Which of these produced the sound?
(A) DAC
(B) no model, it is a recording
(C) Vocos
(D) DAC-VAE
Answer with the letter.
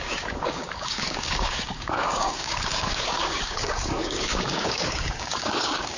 A